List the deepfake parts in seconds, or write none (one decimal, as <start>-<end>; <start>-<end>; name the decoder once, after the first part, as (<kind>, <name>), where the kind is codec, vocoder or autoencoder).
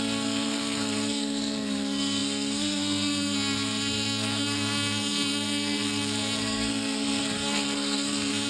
0.0-8.5 (codec, SNAC)